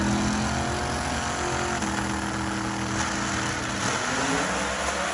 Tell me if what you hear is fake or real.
real